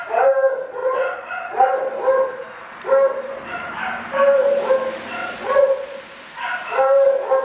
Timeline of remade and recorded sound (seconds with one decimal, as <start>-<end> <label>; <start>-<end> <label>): 0.0-0.8 recorded; 0.8-1.7 remade; 1.7-5.2 recorded; 5.2-6.0 remade; 6.0-7.4 recorded